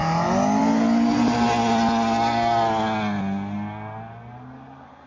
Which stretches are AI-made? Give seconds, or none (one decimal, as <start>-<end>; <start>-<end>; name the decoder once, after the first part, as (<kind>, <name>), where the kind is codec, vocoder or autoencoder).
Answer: none